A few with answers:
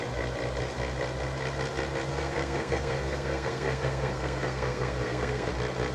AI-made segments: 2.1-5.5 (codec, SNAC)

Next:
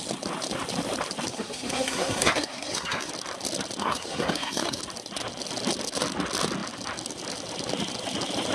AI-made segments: 1.3-3.1 (codec, SNAC); 3.8-4.8

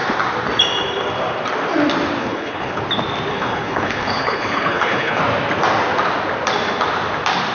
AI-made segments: 2.2-2.8 (codec, HILCodec); 3.3-5.2

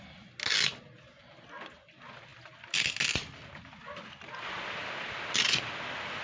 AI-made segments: none

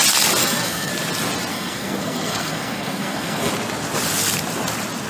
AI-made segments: 0.4-0.9 (codec, SNAC); 1.5-3.5

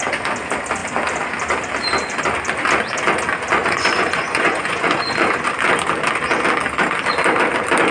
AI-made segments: 3.6-5.5 (vocoder, Vocos)

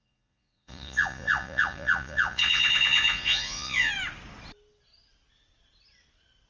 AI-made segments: 0.0-3.9 (vocoder, Vocos)

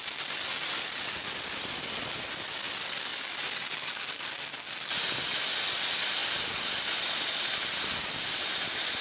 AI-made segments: none